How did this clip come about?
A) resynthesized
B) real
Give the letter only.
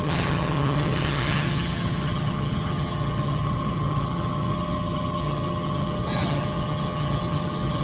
A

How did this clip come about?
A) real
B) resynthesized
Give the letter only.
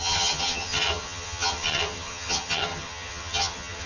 B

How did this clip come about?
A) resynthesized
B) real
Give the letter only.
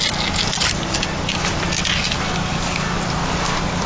B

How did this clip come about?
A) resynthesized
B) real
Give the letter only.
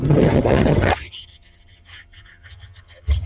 A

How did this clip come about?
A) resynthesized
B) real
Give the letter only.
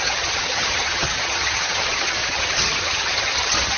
A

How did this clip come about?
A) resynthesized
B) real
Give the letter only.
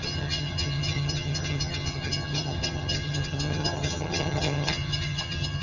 A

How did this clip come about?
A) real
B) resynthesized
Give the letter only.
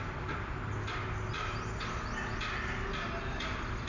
A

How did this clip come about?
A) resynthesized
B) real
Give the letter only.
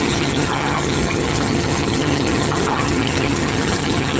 A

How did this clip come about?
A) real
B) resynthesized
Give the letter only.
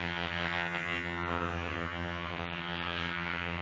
B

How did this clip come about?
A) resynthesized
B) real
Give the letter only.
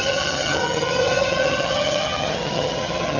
A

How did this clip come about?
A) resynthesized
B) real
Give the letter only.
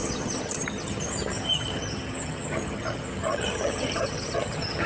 A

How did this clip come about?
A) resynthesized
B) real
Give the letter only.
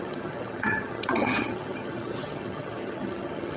A